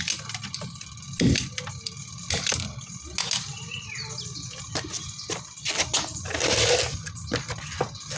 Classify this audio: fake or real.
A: real